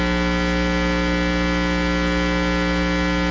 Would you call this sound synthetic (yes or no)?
no